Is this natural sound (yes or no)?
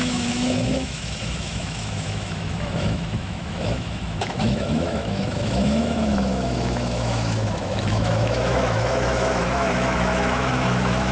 no